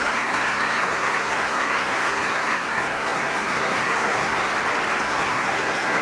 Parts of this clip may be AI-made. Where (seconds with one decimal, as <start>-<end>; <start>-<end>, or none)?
0.0-4.5; 5.0-6.0